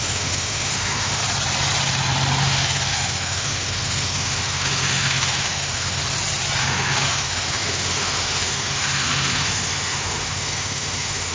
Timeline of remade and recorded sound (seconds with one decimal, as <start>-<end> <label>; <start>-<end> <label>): 0.0-1.2 remade; 1.2-2.4 recorded; 2.4-6.0 remade; 6.0-6.6 recorded; 6.6-11.3 remade